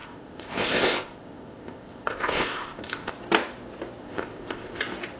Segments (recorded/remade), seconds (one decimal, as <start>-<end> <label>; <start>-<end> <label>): 0.0-3.1 remade; 3.1-4.0 recorded; 4.0-4.8 remade; 4.8-5.2 recorded